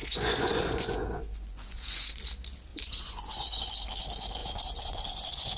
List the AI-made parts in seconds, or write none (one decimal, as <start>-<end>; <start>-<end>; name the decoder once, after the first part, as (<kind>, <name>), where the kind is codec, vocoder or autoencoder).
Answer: 0.0-2.2 (vocoder, Vocos); 2.7-3.7; 4.4-5.6